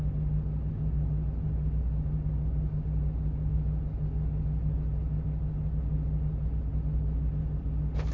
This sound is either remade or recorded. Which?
recorded